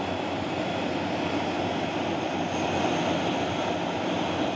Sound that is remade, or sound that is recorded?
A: recorded